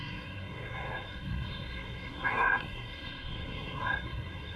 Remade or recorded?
remade